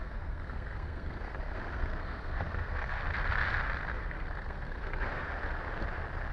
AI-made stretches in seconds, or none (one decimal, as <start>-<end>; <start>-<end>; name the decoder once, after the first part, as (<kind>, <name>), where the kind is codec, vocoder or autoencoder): 0.0-3.0 (codec, SNAC); 3.9-5.3

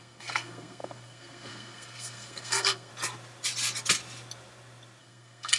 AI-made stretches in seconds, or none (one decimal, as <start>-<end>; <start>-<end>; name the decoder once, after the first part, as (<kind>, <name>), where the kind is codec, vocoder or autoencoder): 0.0-2.9 (codec, SNAC); 5.0-5.6

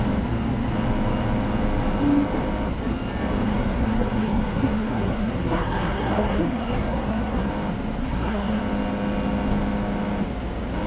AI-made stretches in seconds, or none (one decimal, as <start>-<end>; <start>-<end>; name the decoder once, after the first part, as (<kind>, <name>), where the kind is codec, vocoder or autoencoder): 3.5-7.5 (codec, SNAC); 8.0-8.6

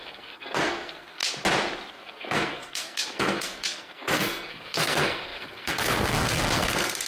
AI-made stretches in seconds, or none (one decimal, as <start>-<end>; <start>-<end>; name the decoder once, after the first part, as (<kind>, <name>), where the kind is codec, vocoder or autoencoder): 0.0-1.2 (codec, SNAC); 1.9-7.1

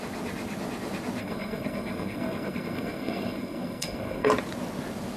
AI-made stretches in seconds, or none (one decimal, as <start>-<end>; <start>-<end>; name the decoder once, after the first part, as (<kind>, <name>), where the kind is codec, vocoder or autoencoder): 1.2-4.3 (codec, SNAC)

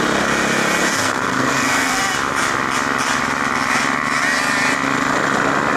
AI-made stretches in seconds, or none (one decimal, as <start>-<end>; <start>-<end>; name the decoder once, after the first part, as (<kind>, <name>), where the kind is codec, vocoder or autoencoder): 1.0-2.0 (codec, SNAC)

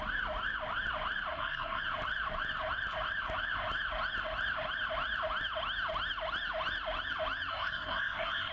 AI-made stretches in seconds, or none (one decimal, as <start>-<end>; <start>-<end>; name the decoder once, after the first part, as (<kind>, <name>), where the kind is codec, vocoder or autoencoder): 1.3-1.8 (codec, SNAC); 7.5-8.5

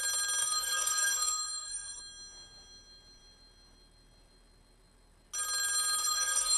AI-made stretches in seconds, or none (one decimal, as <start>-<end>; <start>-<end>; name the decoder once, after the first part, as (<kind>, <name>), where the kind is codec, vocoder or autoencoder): 0.4-2.0 (codec, SNAC); 6.0-6.6